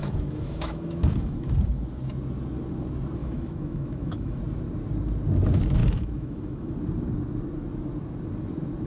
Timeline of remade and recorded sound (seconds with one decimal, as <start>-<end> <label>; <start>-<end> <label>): 0.0-1.5 remade; 1.5-3.2 recorded; 3.2-4.4 remade; 4.4-5.8 recorded; 5.8-6.7 remade; 6.7-8.9 recorded